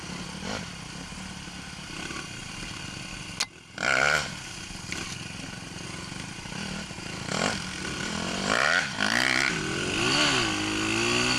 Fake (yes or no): no